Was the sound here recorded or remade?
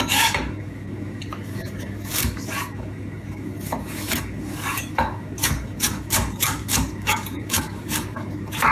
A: remade